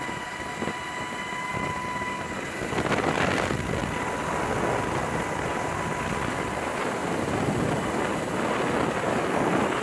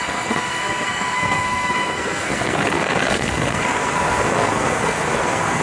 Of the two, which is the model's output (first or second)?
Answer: second